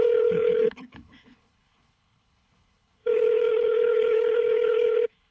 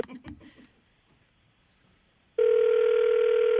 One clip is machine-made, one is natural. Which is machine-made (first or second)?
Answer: first